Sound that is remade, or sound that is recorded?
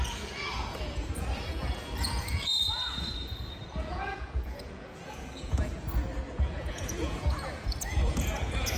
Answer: remade